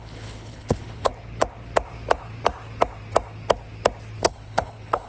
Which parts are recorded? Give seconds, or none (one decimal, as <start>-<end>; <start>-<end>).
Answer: 1.1-4.2